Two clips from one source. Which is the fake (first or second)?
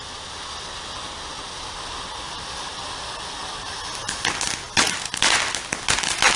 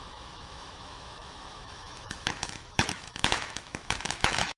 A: second